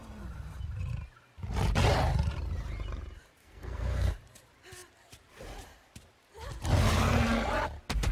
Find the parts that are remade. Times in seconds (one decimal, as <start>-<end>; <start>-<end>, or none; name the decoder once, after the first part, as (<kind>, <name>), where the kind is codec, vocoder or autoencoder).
3.4-4.1 (codec, SNAC)